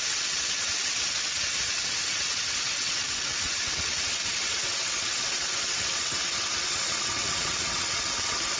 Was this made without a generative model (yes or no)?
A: no